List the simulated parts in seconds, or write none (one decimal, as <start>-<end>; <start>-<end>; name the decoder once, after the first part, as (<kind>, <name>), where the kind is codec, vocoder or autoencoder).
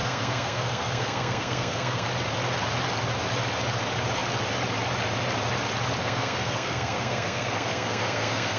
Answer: 0.0-2.1 (codec, SNAC); 6.0-8.6